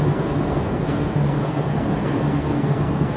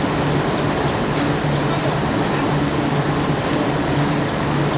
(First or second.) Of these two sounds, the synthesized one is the first